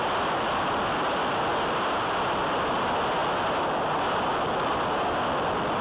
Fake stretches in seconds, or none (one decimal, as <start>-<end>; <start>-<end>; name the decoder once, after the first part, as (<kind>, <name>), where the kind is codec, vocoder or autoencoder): none